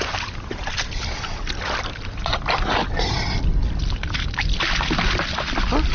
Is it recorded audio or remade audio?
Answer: recorded